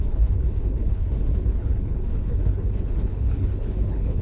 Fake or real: fake